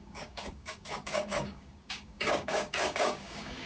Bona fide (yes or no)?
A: no